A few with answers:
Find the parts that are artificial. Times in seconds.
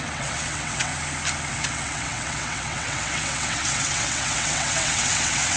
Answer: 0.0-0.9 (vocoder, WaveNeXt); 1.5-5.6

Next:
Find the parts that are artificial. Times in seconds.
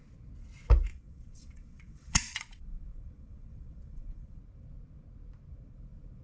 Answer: 0.9-4.4 (vocoder, WaveNeXt)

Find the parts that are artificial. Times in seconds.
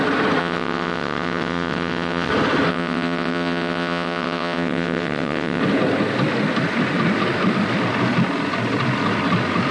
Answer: 0.4-2.3 (vocoder, WaveNeXt); 2.7-5.6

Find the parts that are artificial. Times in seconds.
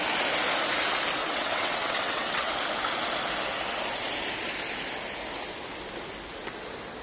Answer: 1.2-2.5 (vocoder, WaveNeXt)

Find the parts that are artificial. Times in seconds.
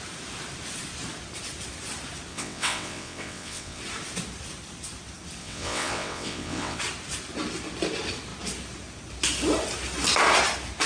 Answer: 2.3-3.8 (vocoder, WaveNeXt); 5.4-6.8